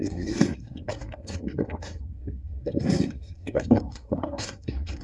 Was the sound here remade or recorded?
remade